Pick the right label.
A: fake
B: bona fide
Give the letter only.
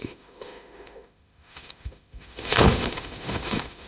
A